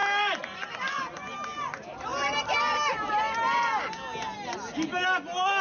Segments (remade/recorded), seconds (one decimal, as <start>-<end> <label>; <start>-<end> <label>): 0.0-5.6 recorded